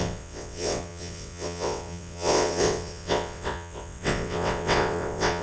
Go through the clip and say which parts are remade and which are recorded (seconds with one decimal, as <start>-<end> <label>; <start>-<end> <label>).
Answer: 0.0-5.4 remade

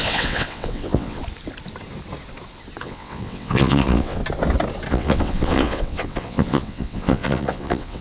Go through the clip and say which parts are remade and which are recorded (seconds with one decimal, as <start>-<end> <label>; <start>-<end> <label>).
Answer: 0.0-1.2 remade; 1.2-2.8 recorded; 2.8-4.2 remade; 4.2-4.9 recorded; 4.9-8.0 remade

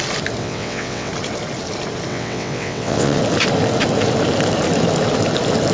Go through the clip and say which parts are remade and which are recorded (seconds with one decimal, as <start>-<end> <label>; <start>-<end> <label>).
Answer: 0.0-0.4 recorded; 0.4-1.1 remade; 1.1-2.1 recorded; 2.1-3.2 remade; 3.2-5.7 recorded

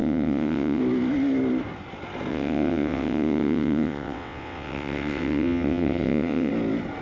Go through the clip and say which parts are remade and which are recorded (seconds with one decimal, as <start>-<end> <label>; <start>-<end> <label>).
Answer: 0.0-0.8 remade; 0.8-2.3 recorded; 2.3-6.5 remade; 6.5-7.0 recorded

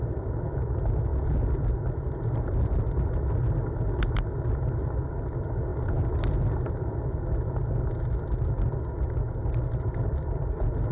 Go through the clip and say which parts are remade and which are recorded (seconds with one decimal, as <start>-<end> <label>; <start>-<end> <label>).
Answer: 0.0-10.9 recorded

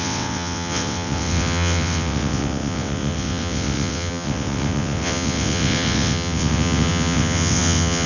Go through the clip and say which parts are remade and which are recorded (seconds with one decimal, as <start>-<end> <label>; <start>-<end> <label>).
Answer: 0.0-8.1 remade